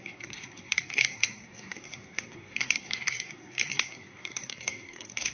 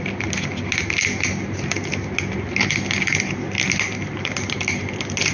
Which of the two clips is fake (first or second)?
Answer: first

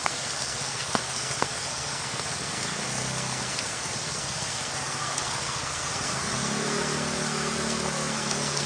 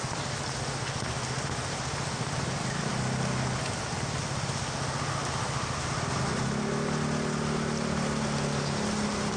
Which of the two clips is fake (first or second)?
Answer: first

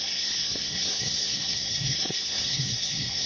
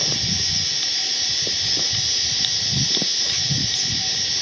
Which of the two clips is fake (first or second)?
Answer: first